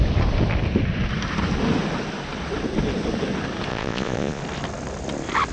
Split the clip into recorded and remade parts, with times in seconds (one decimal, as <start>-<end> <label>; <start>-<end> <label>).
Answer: 0.0-3.7 recorded; 3.7-4.4 remade; 4.4-5.5 recorded